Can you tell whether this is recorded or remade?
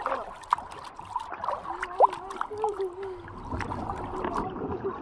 recorded